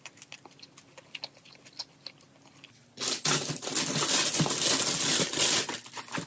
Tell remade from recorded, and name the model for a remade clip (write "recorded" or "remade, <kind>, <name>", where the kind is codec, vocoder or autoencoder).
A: recorded